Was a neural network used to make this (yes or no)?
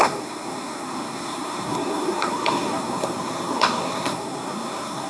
yes